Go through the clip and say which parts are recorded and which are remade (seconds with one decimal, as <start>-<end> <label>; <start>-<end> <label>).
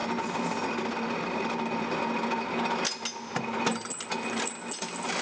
0.0-5.2 recorded